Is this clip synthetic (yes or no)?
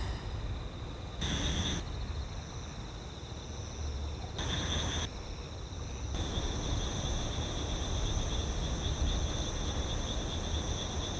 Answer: no